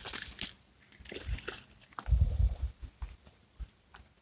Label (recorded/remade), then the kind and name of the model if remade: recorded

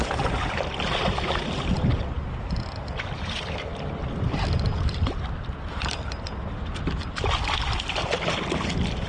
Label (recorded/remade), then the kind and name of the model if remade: remade, vocoder, BigVGAN v2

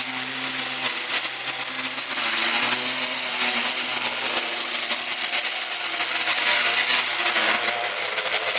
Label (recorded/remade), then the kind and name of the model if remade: recorded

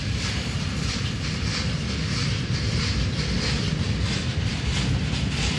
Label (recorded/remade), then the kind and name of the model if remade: remade, vocoder, BigVGAN v2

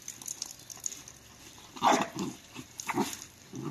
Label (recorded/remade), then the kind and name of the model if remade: recorded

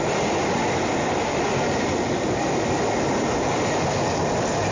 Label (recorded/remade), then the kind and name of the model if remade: recorded